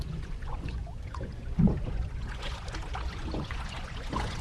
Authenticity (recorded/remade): remade